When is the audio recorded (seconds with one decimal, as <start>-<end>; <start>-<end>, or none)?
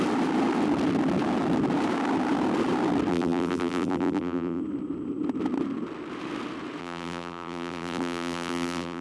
0.0-3.1; 4.6-6.8